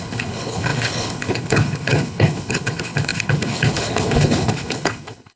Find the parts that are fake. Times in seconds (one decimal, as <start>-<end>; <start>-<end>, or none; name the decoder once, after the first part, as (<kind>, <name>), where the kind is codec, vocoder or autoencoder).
0.0-5.4 (codec, HILCodec)